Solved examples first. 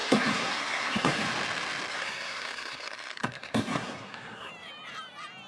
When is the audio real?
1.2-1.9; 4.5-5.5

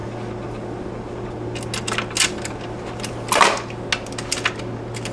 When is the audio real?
0.0-5.1

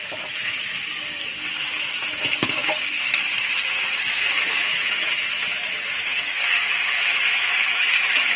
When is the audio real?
none

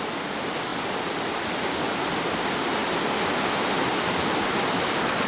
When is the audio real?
0.0-5.3

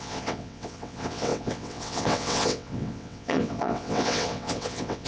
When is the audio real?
none

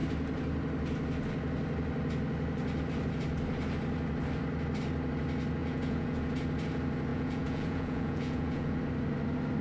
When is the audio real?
0.0-5.6; 6.2-7.1; 8.8-9.6

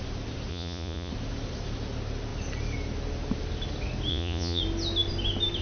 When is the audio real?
0.0-0.5; 1.1-4.1; 4.6-5.6